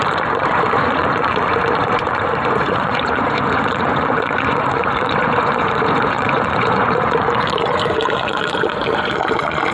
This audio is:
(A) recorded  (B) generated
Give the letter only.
B